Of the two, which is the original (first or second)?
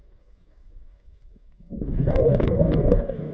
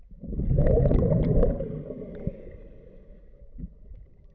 second